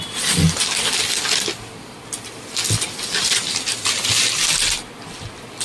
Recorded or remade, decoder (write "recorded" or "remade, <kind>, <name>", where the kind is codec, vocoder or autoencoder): recorded